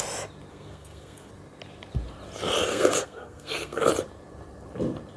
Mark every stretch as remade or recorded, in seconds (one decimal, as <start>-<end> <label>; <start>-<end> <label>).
0.0-0.5 recorded; 0.5-1.3 remade; 1.3-2.7 recorded; 2.7-3.9 remade; 3.9-5.2 recorded